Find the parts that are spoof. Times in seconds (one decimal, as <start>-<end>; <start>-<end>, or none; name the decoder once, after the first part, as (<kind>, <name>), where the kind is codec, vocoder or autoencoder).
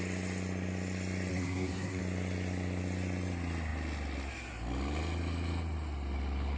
1.3-2.0 (codec, SNAC)